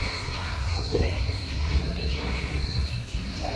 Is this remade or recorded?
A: remade